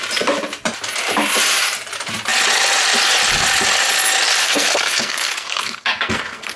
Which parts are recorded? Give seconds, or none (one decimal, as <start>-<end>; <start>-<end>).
0.0-4.4